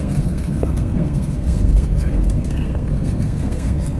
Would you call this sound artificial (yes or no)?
yes